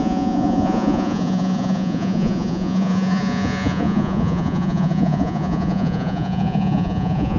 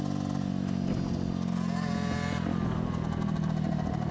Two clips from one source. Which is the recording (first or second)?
second